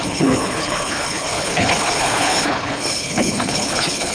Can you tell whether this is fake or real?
fake